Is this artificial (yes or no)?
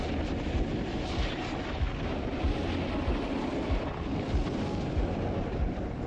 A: no